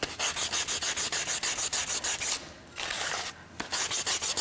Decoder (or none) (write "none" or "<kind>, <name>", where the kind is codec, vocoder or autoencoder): none